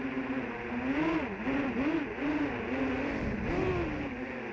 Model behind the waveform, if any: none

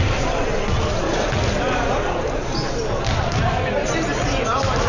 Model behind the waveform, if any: none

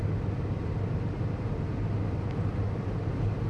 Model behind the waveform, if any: none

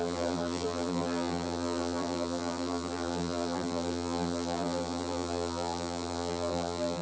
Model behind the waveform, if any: vocoder, BigVGAN v2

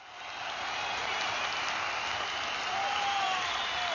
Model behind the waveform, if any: none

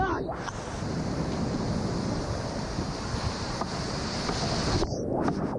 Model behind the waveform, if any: none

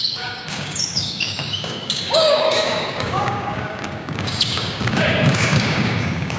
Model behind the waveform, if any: codec, DAC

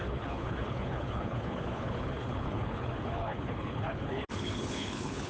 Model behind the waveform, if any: codec, HILCodec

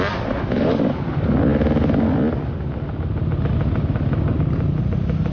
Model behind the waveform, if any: none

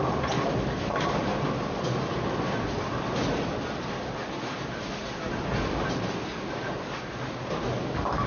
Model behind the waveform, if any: none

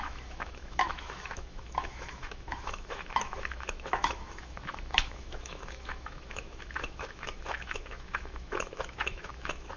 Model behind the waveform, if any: autoencoder, DAC-VAE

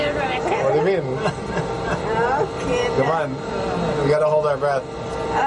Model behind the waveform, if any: none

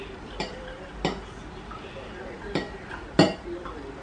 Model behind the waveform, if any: none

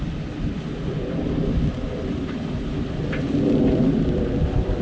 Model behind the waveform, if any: none